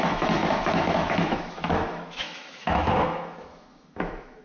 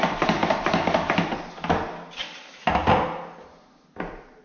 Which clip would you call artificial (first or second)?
first